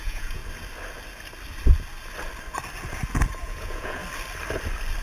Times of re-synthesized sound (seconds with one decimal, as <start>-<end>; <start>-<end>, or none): 0.0-0.4; 3.4-4.0